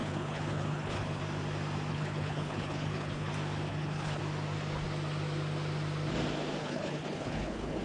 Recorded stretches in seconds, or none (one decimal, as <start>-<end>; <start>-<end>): 1.2-1.9; 3.3-3.7; 4.2-6.6